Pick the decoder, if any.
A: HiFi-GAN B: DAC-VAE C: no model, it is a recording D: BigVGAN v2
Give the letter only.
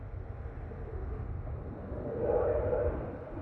C